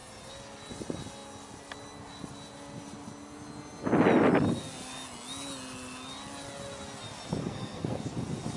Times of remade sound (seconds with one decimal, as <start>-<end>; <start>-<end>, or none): 7.4-8.0